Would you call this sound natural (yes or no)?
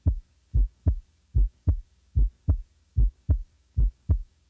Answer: no